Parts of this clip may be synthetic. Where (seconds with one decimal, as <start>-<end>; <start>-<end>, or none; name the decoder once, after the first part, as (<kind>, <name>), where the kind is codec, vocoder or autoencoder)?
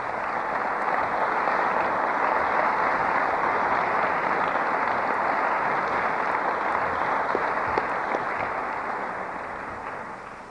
0.6-1.3 (vocoder, Vocos); 3.0-3.8